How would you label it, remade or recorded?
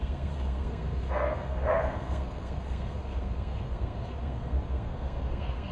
remade